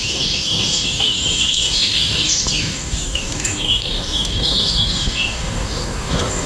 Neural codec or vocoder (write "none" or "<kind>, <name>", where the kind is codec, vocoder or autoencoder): codec, DAC